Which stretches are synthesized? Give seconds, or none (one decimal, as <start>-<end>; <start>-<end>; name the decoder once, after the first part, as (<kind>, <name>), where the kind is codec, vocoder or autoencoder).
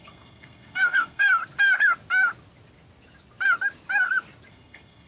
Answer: 0.0-1.4 (codec, SNAC); 4.5-5.1